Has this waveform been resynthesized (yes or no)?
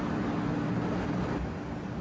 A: no